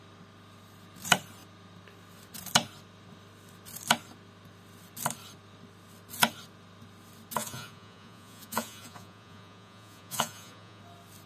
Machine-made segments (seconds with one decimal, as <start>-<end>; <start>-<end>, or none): 7.4-10.8